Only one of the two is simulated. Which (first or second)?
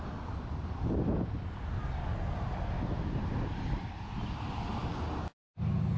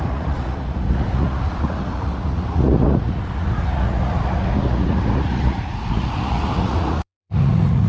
second